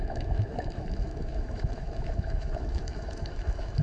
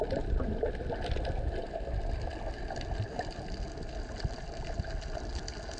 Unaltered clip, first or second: second